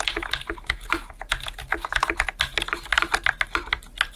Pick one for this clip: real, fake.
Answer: real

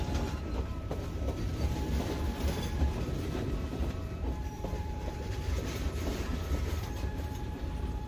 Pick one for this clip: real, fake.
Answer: fake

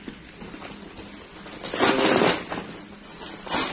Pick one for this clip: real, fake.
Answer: real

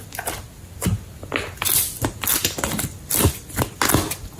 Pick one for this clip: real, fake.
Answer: real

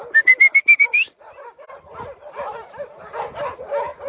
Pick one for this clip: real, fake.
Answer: fake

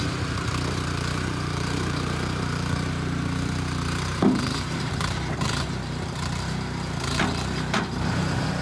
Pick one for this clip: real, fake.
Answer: fake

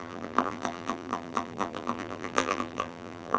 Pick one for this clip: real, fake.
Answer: fake